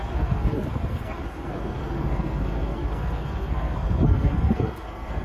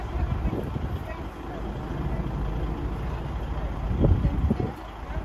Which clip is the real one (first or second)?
second